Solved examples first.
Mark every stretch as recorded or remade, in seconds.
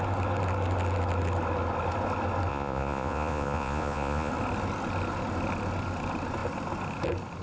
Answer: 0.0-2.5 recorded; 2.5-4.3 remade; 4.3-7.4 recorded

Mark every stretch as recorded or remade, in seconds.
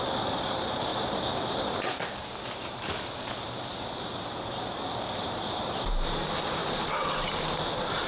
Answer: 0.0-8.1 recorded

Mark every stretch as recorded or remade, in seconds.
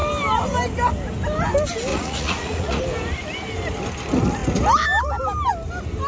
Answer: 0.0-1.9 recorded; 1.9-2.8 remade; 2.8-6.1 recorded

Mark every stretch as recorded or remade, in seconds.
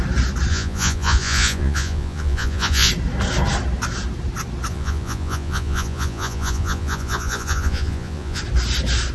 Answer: 0.0-0.5 recorded; 0.5-2.9 remade; 2.9-4.7 recorded; 4.7-8.4 remade; 8.4-9.1 recorded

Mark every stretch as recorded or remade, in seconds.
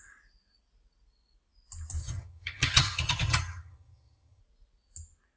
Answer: 0.0-2.0 recorded; 2.0-4.4 remade; 4.4-5.4 recorded